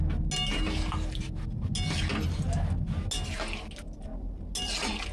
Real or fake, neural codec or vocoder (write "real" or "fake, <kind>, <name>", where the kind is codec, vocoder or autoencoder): real